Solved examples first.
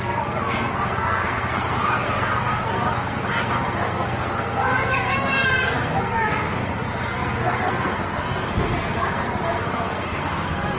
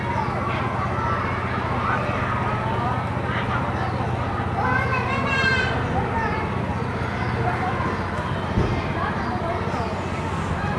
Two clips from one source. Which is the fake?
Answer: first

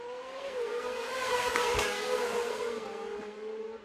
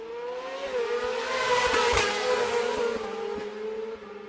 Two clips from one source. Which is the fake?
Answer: first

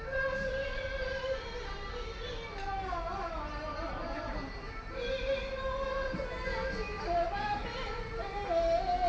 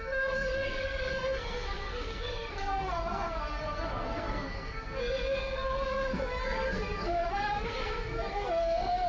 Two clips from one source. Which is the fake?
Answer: second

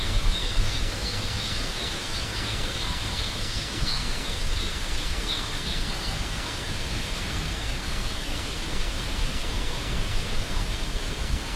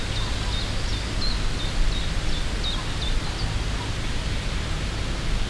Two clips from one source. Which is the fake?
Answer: first